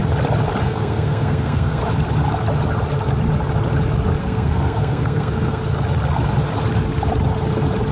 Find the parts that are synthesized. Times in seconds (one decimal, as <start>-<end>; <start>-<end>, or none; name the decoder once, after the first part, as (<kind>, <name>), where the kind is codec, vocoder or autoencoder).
0.6-1.8 (codec, SNAC); 4.2-5.6